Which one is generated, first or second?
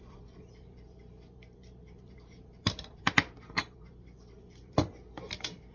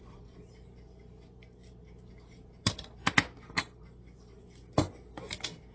first